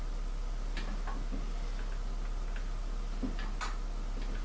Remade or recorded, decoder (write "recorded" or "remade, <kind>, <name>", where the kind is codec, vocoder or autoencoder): recorded